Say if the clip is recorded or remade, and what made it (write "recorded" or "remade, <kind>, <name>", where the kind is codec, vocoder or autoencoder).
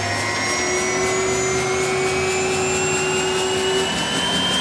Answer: recorded